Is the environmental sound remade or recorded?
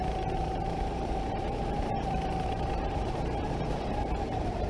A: remade